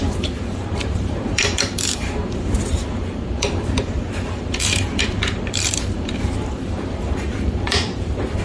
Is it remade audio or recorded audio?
remade